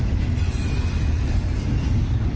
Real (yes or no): yes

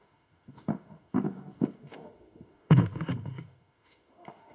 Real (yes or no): no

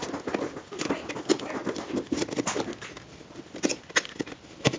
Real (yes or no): yes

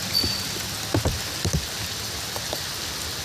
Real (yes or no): yes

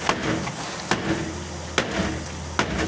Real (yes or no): yes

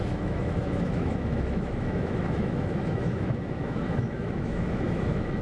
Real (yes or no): no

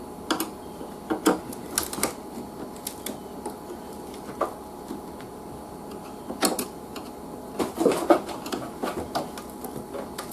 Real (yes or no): yes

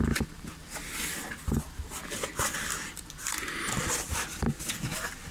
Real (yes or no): yes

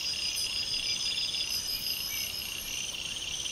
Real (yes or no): yes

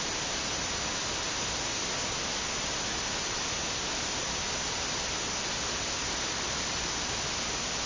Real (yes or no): yes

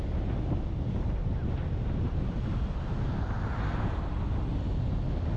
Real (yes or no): yes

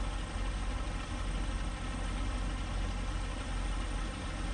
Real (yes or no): yes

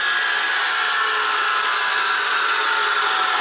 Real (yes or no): yes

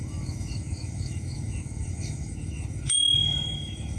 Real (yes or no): no